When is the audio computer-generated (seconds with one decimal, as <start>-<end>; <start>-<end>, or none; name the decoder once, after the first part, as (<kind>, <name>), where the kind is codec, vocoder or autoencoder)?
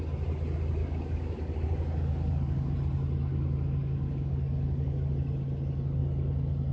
0.8-2.7 (codec, DAC); 3.3-5.1